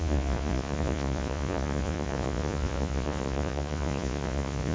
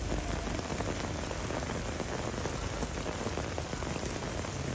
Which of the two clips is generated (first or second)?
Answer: first